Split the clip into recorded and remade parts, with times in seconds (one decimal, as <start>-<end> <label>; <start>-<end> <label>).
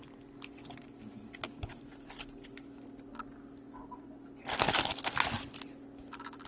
0.0-6.5 recorded